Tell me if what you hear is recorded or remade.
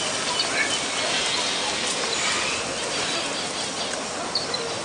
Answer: recorded